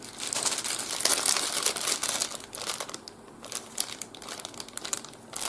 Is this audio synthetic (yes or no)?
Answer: no